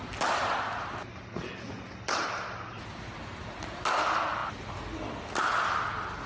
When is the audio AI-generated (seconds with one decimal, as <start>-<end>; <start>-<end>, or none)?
none